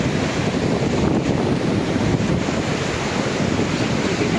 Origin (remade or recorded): recorded